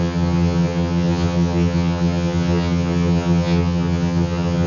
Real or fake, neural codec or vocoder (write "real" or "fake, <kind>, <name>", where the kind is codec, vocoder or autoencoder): fake, vocoder, HiFi-GAN